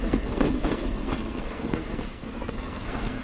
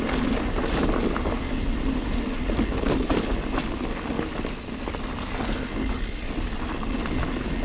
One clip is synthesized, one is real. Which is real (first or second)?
second